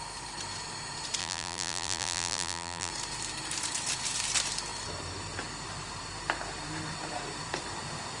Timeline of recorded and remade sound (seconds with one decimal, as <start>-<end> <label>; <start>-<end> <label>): 0.0-1.2 recorded; 1.2-2.9 remade; 2.9-8.2 recorded